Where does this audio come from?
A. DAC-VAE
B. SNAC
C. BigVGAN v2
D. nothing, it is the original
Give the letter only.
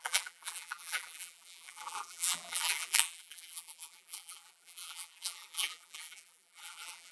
C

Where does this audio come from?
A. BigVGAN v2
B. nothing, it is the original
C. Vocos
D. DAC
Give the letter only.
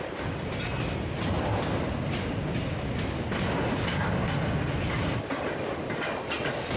B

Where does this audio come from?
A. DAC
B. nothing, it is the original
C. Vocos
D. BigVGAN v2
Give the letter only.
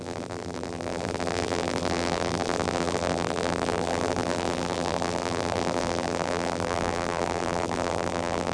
D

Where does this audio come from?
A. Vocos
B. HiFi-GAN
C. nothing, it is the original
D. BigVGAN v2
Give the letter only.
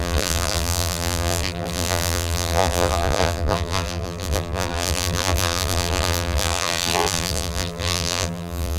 D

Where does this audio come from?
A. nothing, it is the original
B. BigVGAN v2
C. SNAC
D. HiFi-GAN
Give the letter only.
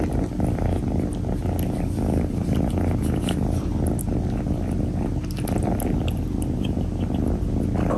B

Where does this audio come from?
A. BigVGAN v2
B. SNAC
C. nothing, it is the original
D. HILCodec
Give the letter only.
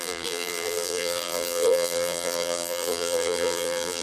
A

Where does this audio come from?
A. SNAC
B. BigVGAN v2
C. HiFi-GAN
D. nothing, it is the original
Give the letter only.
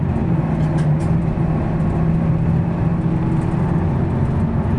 D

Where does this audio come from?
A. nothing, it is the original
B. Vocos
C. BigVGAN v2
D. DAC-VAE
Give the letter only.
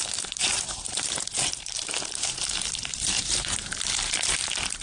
C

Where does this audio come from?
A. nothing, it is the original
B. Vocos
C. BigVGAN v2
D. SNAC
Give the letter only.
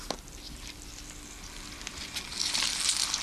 A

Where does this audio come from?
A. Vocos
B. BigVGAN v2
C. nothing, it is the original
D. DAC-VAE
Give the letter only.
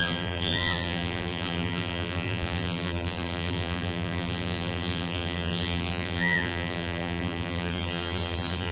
B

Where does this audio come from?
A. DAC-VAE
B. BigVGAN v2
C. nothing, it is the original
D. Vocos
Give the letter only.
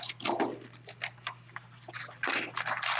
C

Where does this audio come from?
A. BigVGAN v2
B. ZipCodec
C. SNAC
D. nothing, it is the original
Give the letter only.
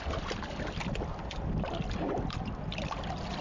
D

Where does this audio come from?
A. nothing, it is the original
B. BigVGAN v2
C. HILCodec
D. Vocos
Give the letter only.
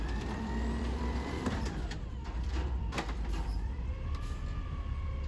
B